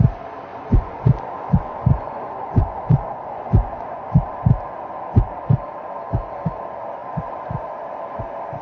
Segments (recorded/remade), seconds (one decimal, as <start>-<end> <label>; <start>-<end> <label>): 0.0-0.5 recorded; 0.5-4.3 remade; 4.3-8.6 recorded